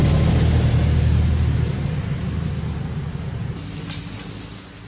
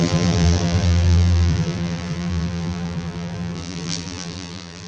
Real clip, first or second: first